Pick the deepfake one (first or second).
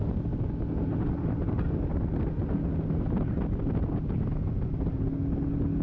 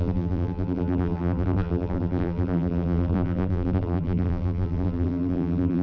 second